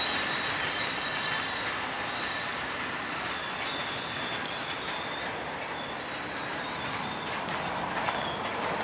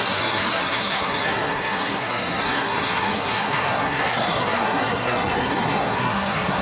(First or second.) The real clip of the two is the first